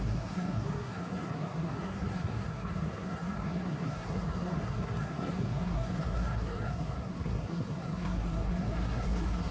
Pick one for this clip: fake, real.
fake